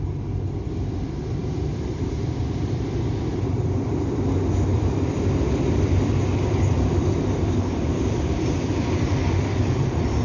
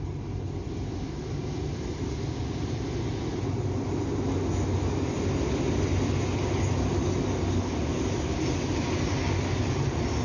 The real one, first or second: second